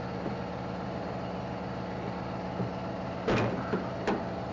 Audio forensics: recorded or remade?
recorded